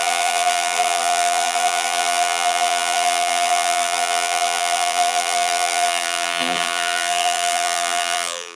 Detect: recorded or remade remade